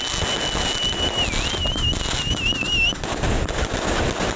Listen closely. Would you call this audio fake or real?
real